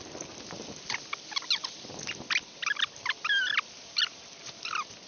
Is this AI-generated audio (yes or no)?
no